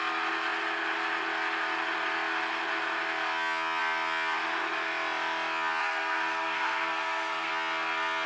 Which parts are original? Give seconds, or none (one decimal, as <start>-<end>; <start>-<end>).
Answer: 0.0-5.8; 7.5-8.3